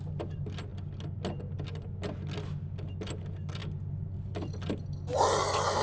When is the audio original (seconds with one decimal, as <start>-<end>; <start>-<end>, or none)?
0.0-5.8